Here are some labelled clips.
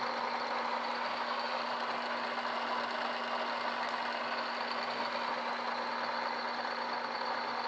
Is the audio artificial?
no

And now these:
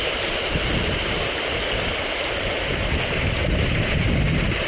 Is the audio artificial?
no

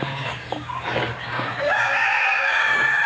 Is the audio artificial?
yes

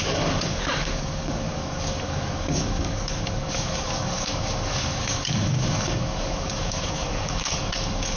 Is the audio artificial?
yes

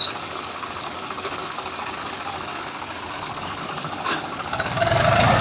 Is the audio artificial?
yes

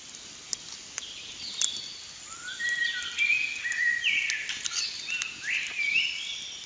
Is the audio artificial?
no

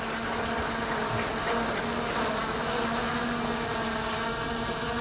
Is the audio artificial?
no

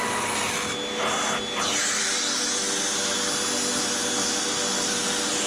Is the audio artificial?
no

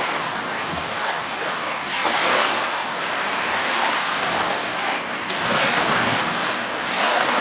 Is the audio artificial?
yes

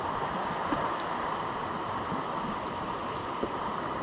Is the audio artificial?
no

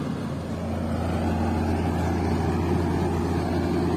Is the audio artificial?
no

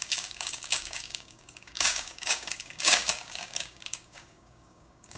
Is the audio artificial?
yes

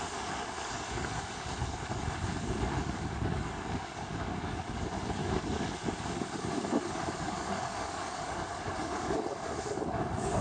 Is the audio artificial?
yes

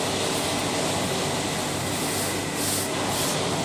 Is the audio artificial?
no